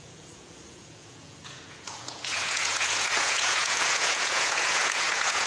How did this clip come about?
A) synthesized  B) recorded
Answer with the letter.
A